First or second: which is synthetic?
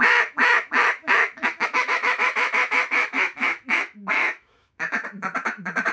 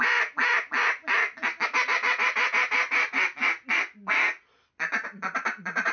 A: first